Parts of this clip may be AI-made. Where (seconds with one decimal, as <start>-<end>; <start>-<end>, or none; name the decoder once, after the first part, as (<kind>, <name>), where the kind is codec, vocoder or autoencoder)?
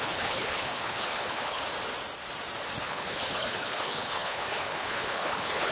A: 0.0-1.6 (codec, HILCodec); 2.8-5.7